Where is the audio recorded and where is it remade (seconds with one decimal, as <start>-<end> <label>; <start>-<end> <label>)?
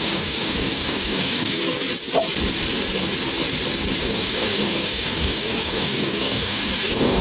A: 0.0-1.6 remade; 1.6-4.0 recorded; 4.0-7.2 remade